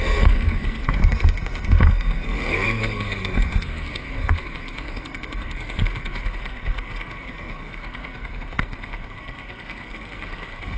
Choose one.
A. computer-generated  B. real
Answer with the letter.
A